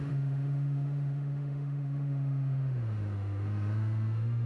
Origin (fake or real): fake